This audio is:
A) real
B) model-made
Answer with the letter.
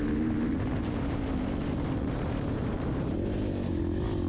A